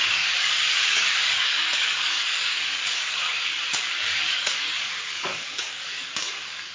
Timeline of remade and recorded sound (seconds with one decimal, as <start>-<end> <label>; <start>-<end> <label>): 0.0-6.7 remade